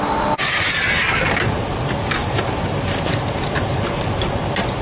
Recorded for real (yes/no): yes